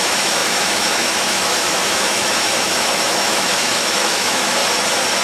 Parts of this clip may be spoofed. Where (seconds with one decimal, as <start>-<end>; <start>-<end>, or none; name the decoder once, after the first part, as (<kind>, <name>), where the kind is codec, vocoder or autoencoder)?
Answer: 0.0-4.6 (autoencoder, DAC-VAE)